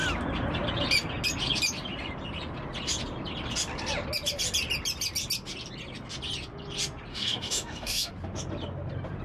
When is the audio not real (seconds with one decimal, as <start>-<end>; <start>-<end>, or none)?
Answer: 7.1-8.1